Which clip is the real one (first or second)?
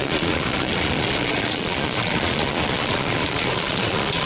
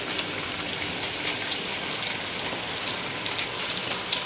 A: second